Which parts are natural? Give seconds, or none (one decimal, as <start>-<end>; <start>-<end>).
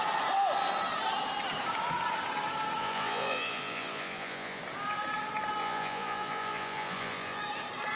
0.0-2.8; 4.6-5.6; 7.4-8.0